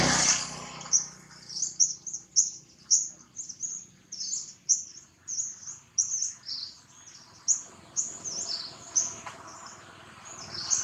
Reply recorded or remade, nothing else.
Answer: recorded